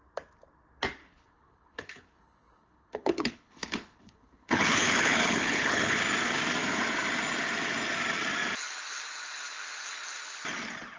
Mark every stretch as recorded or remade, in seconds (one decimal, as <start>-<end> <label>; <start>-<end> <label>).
0.0-1.0 recorded; 1.0-6.0 remade; 6.0-11.0 recorded